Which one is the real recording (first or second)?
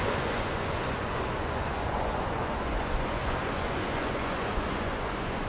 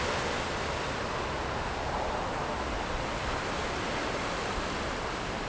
second